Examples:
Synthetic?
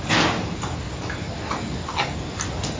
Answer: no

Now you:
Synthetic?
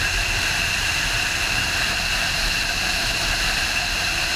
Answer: yes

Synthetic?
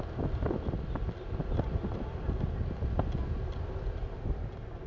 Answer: no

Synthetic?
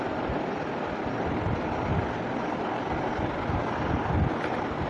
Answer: no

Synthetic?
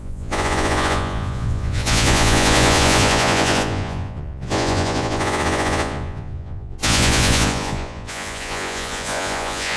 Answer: yes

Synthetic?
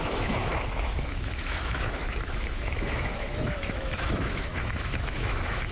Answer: yes